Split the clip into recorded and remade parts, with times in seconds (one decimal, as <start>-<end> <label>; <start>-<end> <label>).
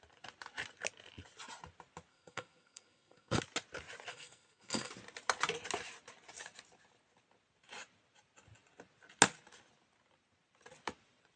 0.0-2.1 recorded; 2.1-3.4 remade; 3.4-4.1 recorded; 4.1-4.9 remade; 4.9-11.4 recorded